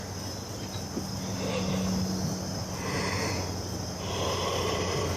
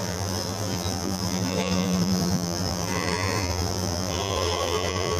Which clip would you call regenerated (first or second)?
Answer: second